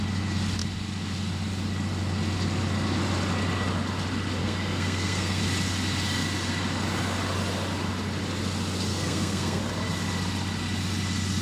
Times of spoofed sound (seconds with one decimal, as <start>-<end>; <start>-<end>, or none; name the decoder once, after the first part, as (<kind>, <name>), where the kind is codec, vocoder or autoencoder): 4.4-5.4 (codec, SNAC); 8.9-9.6